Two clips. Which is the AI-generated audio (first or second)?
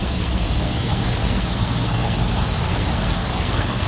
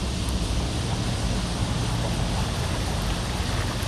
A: first